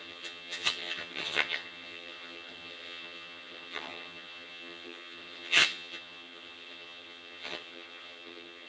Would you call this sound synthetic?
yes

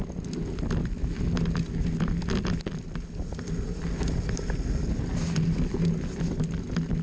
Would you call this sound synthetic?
no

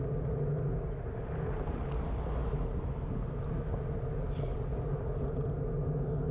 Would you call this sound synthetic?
no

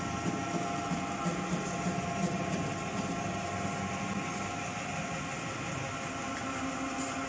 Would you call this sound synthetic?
no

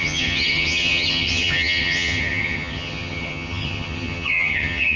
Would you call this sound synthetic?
yes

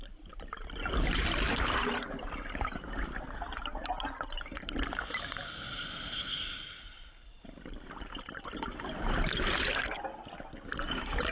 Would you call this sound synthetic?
no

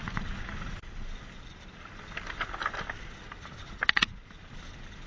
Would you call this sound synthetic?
no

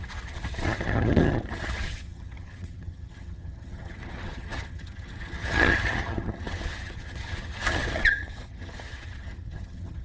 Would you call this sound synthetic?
yes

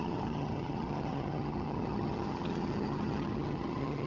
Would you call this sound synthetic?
yes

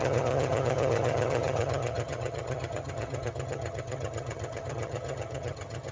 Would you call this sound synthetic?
yes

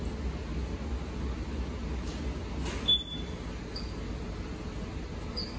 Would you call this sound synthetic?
no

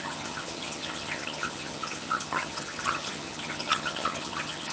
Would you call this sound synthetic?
yes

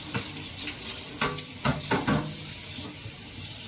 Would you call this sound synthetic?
no